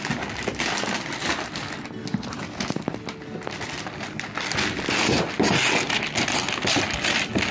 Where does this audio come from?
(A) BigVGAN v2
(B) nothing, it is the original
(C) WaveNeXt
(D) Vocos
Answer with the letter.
B